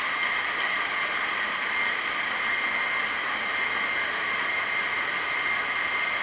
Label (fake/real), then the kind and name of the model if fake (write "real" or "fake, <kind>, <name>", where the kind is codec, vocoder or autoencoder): real